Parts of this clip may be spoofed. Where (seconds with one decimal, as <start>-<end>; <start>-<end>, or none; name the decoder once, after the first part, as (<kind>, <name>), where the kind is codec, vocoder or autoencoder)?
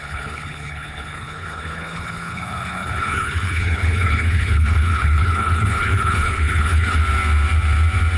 0.0-7.0 (codec, HILCodec)